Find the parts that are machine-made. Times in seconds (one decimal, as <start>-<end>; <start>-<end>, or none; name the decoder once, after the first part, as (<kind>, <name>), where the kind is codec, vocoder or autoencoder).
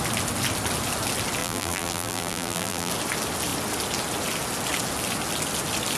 1.4-2.9 (vocoder, BigVGAN v2)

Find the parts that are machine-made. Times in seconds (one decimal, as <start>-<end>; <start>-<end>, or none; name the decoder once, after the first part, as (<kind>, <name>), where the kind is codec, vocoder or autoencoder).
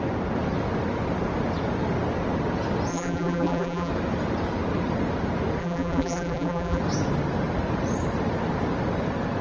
2.9-3.9 (vocoder, BigVGAN v2); 5.6-6.8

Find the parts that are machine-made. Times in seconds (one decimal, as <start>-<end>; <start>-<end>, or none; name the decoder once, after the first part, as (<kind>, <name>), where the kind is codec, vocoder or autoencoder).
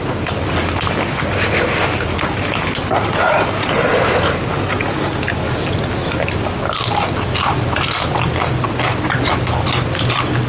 3.9-4.7 (vocoder, BigVGAN v2)